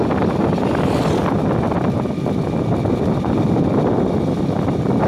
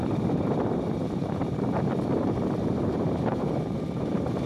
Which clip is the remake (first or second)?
second